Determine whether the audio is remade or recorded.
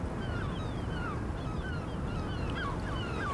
recorded